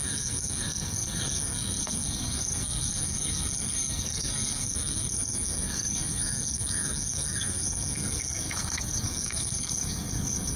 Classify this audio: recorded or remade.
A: remade